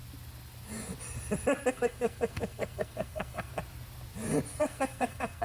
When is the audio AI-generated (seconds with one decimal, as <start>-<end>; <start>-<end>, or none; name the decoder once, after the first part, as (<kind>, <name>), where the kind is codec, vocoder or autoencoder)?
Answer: 1.7-3.5 (codec, SNAC); 4.5-5.4